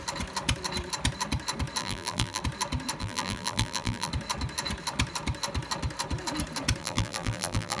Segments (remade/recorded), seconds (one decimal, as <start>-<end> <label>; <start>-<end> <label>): 0.0-1.8 recorded; 1.8-2.4 remade; 2.4-3.0 recorded; 3.0-4.1 remade; 4.1-6.8 recorded; 6.8-7.8 remade